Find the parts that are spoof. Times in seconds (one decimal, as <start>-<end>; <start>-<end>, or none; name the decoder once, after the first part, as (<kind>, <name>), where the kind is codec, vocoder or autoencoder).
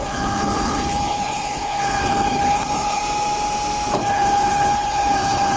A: 0.0-3.0 (codec, HILCodec); 4.0-5.6